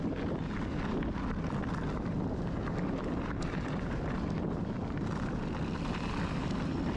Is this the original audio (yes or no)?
yes